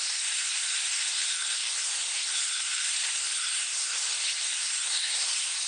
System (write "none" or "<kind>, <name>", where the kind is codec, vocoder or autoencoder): codec, SNAC